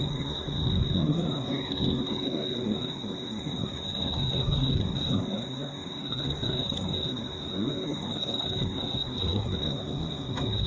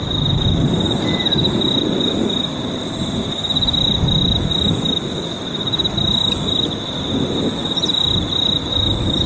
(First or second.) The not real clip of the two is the first